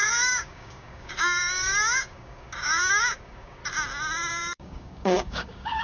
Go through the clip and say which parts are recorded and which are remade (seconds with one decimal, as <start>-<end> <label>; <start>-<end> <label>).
0.0-3.6 remade; 3.6-4.3 recorded; 4.3-5.8 remade

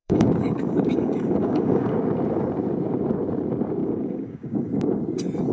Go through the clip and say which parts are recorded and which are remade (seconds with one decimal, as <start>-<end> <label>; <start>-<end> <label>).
0.0-1.9 remade; 1.9-3.8 recorded; 3.8-4.7 remade; 4.7-5.5 recorded

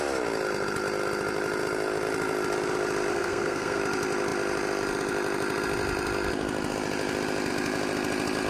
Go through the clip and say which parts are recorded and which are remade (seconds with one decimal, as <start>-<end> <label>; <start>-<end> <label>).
0.0-3.1 recorded; 3.1-3.8 remade; 3.8-8.5 recorded